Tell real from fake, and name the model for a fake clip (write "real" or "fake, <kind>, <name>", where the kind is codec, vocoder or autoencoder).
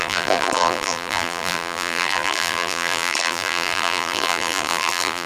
fake, vocoder, BigVGAN v2